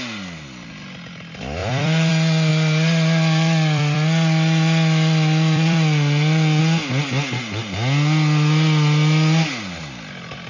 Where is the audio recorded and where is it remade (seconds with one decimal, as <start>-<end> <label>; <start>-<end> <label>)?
0.0-1.6 recorded; 1.6-2.1 remade; 2.1-2.5 recorded; 2.5-6.6 remade; 6.6-10.5 recorded